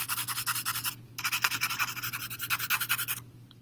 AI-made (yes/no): no